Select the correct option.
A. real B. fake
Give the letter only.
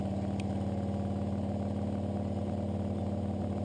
A